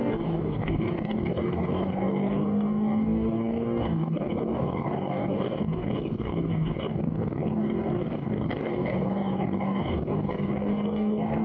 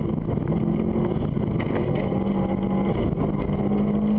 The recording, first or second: second